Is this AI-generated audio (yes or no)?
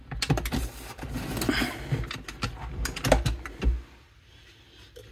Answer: no